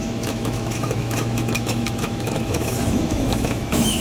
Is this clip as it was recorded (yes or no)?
no